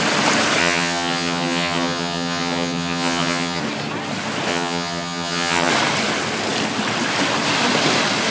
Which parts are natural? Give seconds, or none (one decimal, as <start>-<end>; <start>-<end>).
0.0-0.6; 3.6-4.5; 5.7-8.3